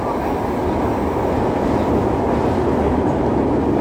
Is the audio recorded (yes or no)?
yes